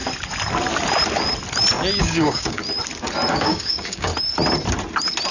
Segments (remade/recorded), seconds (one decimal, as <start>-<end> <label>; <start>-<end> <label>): 0.0-2.0 recorded; 2.0-2.6 remade; 2.6-3.3 recorded; 3.3-4.1 remade; 4.1-5.3 recorded